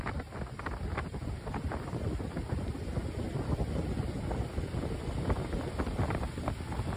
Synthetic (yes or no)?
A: no